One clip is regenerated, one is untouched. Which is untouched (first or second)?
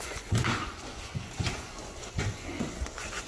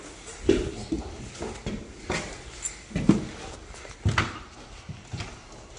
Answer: second